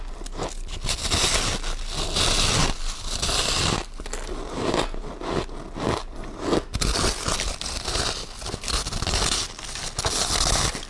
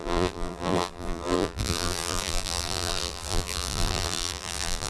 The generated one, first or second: second